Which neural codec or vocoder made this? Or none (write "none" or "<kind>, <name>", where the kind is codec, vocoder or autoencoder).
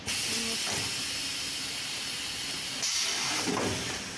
none